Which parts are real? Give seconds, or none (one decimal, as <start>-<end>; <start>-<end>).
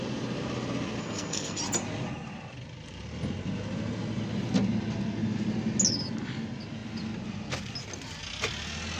0.0-1.0; 1.6-9.0